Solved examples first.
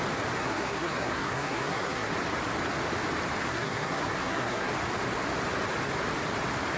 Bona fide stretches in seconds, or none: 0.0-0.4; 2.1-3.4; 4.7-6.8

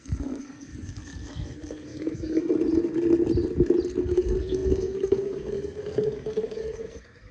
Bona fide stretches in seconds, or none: 2.5-4.0

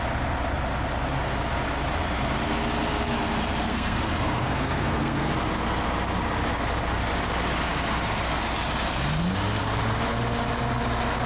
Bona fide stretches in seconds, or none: 0.0-3.7; 5.3-11.3

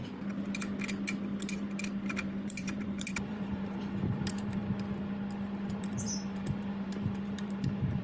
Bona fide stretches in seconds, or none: 0.0-1.5; 4.6-5.8